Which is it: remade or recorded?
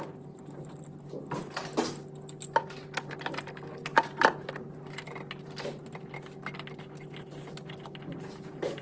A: recorded